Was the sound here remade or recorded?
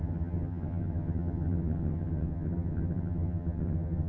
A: remade